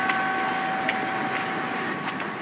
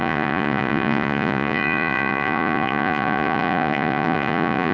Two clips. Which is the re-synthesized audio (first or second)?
second